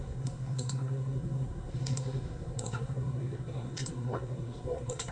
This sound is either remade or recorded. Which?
remade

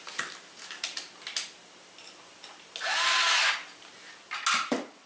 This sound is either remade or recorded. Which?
recorded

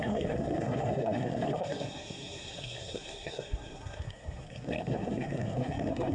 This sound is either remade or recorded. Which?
remade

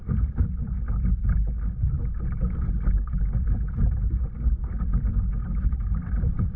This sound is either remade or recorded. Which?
recorded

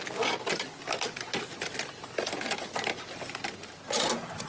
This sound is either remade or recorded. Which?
recorded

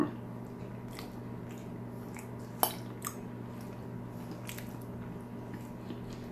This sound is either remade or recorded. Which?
recorded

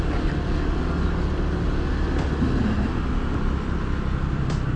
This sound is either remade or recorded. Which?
recorded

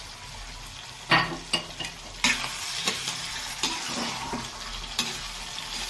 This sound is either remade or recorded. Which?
recorded